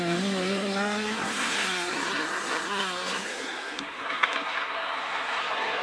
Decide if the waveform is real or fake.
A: fake